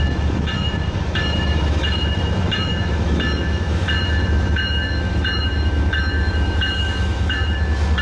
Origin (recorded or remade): remade